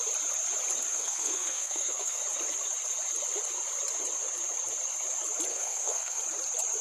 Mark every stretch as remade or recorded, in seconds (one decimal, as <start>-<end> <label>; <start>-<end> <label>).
0.0-0.9 recorded; 0.9-2.2 remade; 2.2-5.5 recorded; 5.5-6.2 remade; 6.2-6.8 recorded